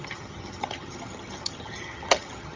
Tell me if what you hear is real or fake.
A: fake